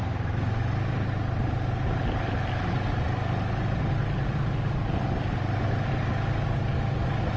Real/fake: real